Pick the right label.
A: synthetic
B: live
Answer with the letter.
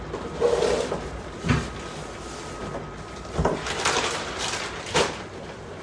B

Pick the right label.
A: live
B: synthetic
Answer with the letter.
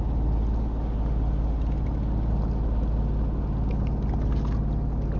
A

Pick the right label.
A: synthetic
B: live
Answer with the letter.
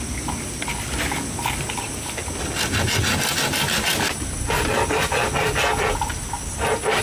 B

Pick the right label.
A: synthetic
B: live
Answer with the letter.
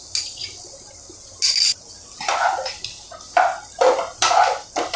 B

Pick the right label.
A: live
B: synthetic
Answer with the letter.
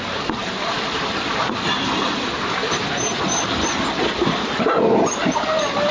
B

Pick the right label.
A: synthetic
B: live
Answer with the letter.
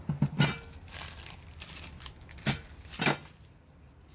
B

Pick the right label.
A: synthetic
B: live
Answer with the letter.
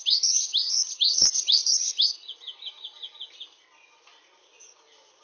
B